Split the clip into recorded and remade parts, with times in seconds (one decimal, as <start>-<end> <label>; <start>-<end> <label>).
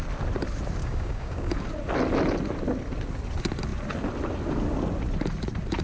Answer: 0.0-0.8 recorded; 0.8-1.5 remade; 1.5-5.8 recorded